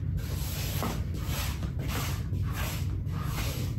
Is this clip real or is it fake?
real